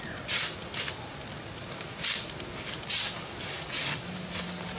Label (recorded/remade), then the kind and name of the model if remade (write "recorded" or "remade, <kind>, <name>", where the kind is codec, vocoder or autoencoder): recorded